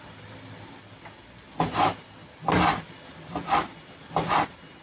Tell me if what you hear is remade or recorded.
recorded